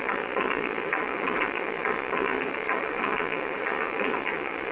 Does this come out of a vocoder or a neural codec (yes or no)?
yes